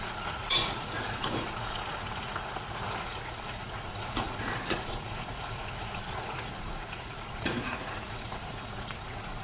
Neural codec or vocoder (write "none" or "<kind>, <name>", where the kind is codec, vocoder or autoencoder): vocoder, Vocos